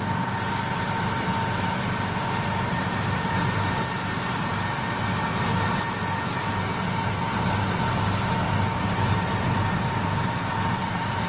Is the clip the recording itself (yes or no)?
yes